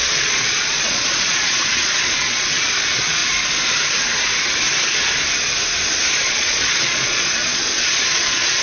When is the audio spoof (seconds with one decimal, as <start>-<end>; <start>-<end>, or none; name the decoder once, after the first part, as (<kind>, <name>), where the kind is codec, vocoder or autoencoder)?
0.0-3.2 (vocoder, Vocos); 6.1-8.6